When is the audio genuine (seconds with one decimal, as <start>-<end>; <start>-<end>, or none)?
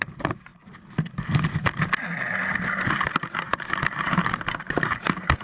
0.5-3.2